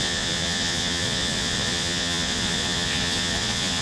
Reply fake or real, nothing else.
fake